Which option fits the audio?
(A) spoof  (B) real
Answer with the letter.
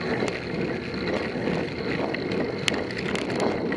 B